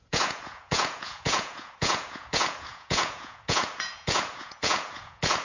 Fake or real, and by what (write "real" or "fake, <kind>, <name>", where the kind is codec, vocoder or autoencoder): fake, vocoder, Vocos